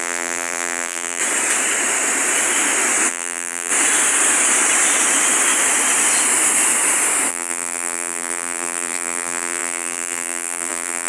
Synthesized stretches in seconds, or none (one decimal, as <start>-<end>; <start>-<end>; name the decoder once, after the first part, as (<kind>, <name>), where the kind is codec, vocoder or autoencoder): 0.0-1.2 (vocoder, BigVGAN v2); 3.1-3.7; 7.3-11.1